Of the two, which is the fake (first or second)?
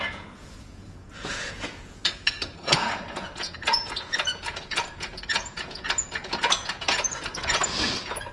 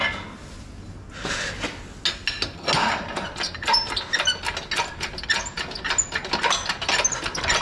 first